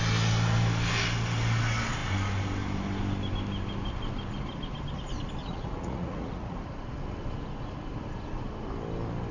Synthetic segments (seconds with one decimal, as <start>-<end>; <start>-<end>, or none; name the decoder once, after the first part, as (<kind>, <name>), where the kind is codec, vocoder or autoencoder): 5.4-6.6 (vocoder, Vocos)